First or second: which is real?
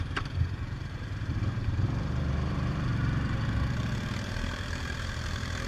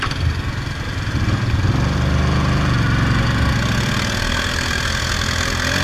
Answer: second